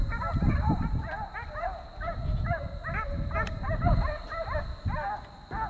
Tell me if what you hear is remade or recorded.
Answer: recorded